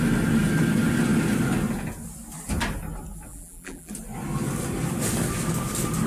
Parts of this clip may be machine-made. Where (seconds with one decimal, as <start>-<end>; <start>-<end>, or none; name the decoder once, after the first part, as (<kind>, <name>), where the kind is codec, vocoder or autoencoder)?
3.3-3.9 (vocoder, BigVGAN v2)